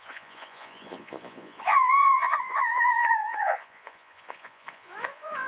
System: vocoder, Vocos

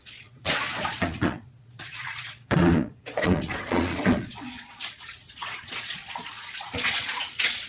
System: vocoder, Vocos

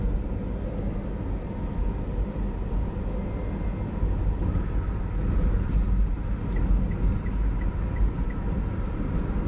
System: none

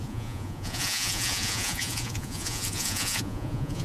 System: vocoder, Vocos